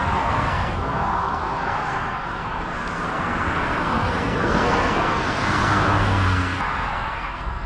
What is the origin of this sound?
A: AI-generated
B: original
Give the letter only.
A